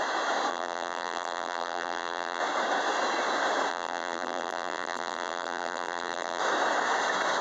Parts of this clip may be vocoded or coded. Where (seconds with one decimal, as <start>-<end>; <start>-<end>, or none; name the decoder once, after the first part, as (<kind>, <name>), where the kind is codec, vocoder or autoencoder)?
0.5-2.4 (vocoder, BigVGAN v2); 3.7-6.4